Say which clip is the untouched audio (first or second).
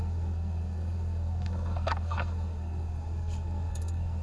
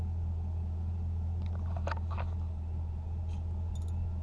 second